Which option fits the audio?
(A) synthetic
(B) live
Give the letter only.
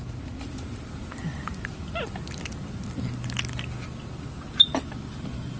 B